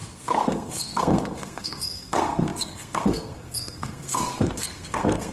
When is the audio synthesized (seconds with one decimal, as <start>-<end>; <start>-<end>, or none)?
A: 0.0-5.3